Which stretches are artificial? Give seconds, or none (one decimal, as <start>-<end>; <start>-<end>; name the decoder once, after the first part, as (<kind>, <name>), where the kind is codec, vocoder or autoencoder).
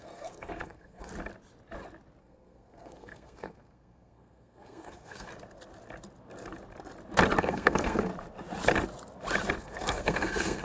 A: 0.0-1.1 (codec, SNAC); 2.2-5.3; 7.4-8.1; 9.6-10.6